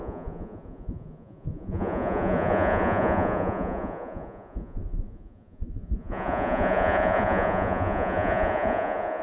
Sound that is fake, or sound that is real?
fake